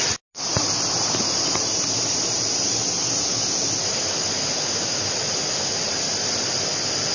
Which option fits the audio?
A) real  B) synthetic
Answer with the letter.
A